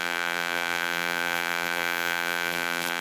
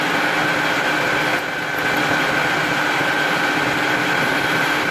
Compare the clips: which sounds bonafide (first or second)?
second